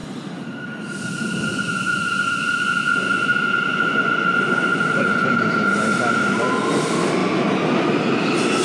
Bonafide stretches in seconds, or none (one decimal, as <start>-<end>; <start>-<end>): 0.0-1.5; 5.3-8.6